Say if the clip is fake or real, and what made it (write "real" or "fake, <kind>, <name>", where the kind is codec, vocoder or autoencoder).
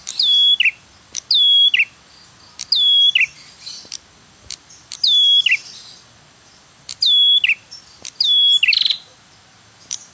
real